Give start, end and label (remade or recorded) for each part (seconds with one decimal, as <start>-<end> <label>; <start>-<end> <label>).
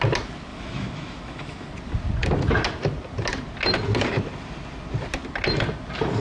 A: 0.0-0.5 recorded; 0.5-1.7 remade; 1.7-6.2 recorded